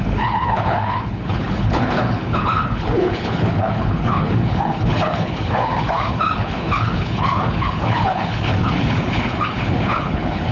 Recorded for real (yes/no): no